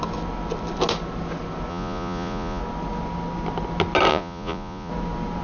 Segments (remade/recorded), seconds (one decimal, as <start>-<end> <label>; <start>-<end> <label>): 0.0-1.7 recorded; 1.7-2.6 remade; 2.6-4.1 recorded; 4.1-4.9 remade; 4.9-5.4 recorded